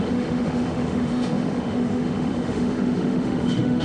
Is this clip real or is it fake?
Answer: fake